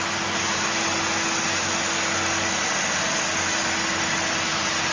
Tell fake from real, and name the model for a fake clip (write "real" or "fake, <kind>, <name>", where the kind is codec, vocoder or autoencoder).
real